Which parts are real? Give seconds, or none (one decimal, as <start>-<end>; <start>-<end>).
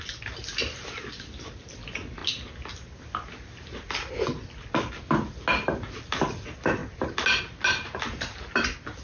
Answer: 0.0-9.0